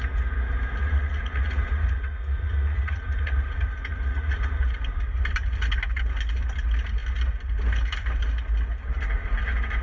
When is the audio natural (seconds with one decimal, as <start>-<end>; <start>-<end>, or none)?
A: 0.0-0.8; 4.6-9.8